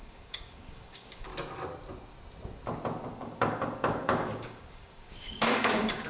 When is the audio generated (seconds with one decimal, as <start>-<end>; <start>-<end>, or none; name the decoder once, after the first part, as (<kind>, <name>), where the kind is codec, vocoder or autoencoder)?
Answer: 0.0-1.3 (codec, DAC); 3.1-6.1